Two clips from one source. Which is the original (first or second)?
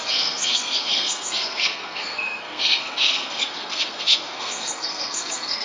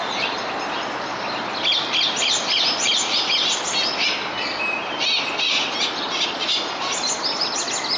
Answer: second